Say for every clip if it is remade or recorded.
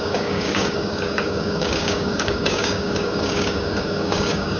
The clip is remade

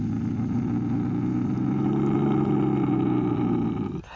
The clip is recorded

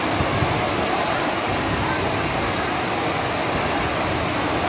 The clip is recorded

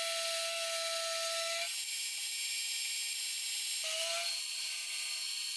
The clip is recorded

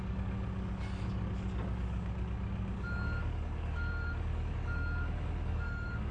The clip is remade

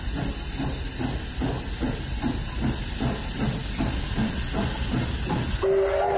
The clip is recorded